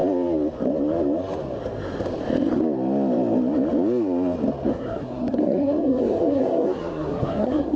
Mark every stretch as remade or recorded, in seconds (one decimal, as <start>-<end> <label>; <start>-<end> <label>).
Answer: 0.0-4.7 recorded; 4.7-7.8 remade